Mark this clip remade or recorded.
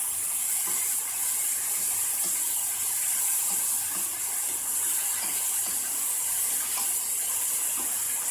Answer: remade